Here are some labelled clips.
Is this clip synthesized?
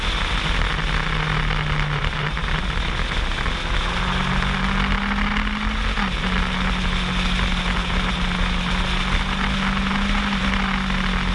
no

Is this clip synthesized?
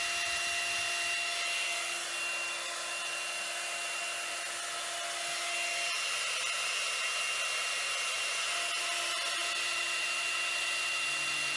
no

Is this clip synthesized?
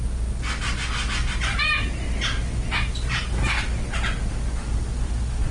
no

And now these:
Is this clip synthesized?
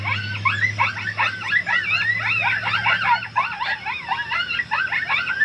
no